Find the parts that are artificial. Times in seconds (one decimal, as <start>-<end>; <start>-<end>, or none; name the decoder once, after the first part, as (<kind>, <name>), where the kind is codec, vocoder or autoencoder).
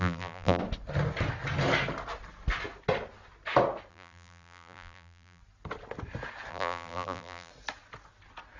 0.0-0.6 (vocoder, BigVGAN v2); 3.9-5.4; 6.5-7.5